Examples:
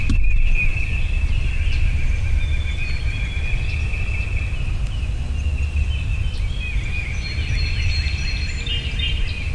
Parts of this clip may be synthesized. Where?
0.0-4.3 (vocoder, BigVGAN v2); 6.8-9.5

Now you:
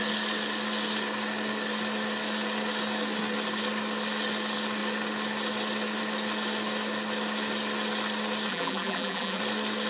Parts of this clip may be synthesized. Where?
8.5-9.4 (vocoder, BigVGAN v2)

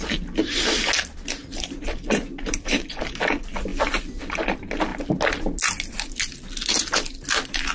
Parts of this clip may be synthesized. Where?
1.4-3.0 (vocoder, BigVGAN v2)

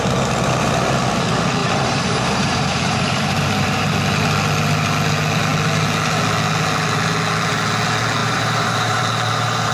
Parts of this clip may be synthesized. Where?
1.6-3.9 (vocoder, BigVGAN v2); 8.2-9.7

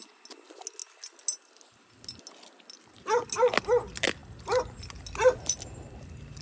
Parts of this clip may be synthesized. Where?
none

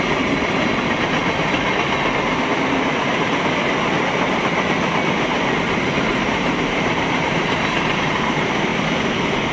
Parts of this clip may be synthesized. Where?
0.0-1.2 (vocoder, BigVGAN v2); 6.1-8.7

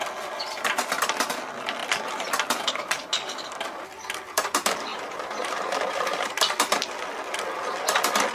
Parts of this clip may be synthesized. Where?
4.9-6.3 (vocoder, BigVGAN v2)